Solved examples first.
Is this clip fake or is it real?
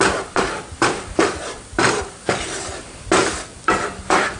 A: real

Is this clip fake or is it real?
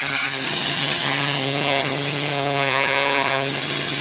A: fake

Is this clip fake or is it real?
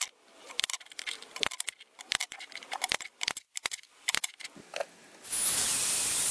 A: real